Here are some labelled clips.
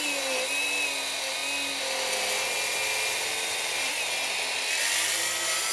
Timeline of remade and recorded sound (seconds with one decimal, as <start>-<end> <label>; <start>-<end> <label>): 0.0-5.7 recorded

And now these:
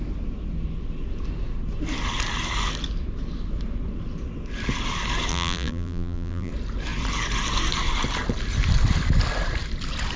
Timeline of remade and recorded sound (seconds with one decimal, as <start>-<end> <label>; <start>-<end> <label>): 0.0-5.3 recorded; 5.3-6.5 remade; 6.5-10.2 recorded

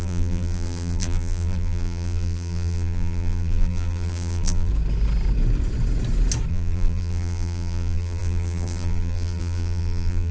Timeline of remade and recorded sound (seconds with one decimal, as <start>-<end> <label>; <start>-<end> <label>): 0.0-4.7 remade; 4.7-6.5 recorded; 6.5-10.3 remade

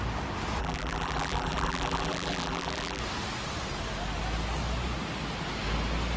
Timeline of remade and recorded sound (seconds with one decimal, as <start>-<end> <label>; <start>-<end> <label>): 0.0-0.6 recorded; 0.6-3.0 remade; 3.0-6.2 recorded

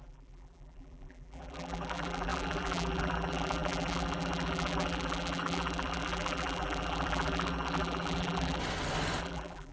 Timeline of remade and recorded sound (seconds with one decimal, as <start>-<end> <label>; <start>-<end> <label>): 0.0-8.6 remade; 8.6-9.2 recorded; 9.2-9.7 remade

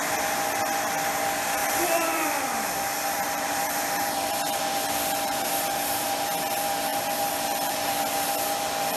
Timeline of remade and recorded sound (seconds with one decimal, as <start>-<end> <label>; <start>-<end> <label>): 0.0-1.6 recorded; 1.6-6.1 remade; 6.1-6.9 recorded; 6.9-7.7 remade; 7.7-9.0 recorded

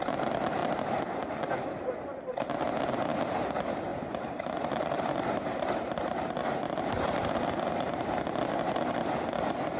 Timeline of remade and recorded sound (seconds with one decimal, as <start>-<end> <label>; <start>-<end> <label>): 0.0-3.9 recorded; 3.9-8.1 remade; 8.1-9.8 recorded

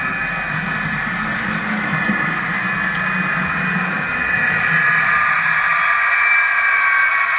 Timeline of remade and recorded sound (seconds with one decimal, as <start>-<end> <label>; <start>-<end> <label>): 0.0-1.9 recorded; 1.9-2.6 remade; 2.6-7.4 recorded